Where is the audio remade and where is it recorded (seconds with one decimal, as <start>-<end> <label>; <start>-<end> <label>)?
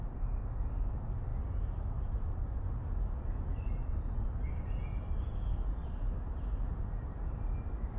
0.0-8.0 recorded